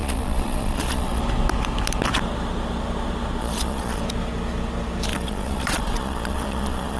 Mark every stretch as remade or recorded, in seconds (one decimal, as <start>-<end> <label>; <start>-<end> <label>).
0.0-1.2 remade; 1.2-3.4 recorded; 3.4-4.0 remade; 4.0-5.1 recorded; 5.1-7.0 remade